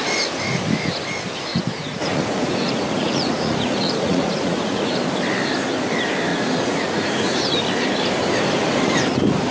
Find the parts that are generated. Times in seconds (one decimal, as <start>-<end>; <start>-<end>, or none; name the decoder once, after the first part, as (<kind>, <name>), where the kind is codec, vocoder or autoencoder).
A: 1.5-4.9 (vocoder, Vocos); 6.3-7.6